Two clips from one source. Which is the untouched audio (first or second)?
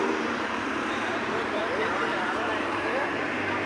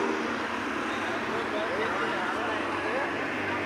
second